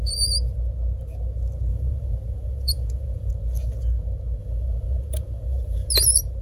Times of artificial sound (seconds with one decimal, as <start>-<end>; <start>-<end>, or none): 1.7-3.3; 4.4-5.9